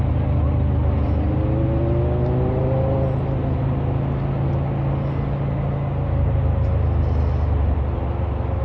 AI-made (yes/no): no